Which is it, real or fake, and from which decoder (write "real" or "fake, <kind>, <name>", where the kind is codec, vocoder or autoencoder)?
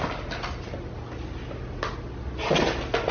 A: real